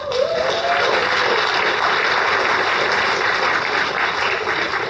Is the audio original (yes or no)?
yes